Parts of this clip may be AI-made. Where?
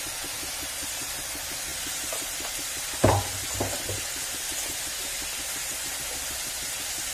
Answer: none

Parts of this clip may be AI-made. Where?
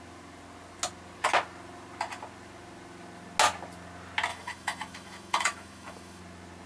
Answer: 4.3-6.2 (autoencoder, DAC-VAE)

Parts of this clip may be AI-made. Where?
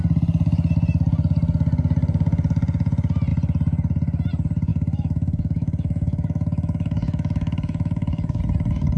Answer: 4.7-8.4 (autoencoder, DAC-VAE)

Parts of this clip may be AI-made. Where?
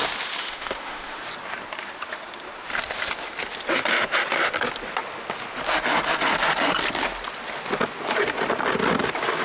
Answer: 0.4-1.2 (autoencoder, DAC-VAE)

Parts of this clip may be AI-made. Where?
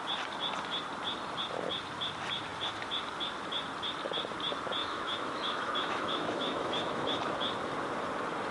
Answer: 4.8-7.2 (autoencoder, DAC-VAE)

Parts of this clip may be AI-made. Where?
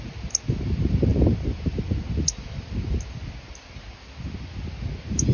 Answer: none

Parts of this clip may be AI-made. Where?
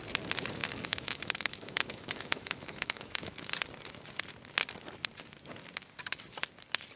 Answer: 0.6-3.5 (autoencoder, DAC-VAE)